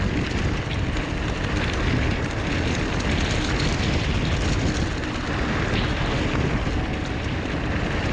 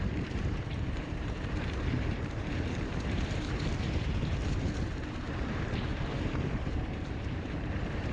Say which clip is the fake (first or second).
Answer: second